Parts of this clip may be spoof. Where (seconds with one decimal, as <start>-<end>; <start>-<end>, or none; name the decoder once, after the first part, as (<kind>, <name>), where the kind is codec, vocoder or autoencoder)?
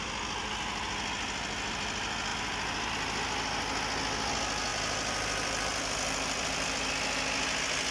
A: 4.7-6.9 (vocoder, BigVGAN v2)